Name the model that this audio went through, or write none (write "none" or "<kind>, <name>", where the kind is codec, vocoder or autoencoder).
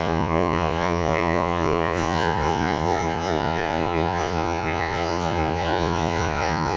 vocoder, Vocos